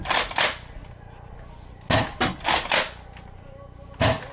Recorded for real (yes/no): yes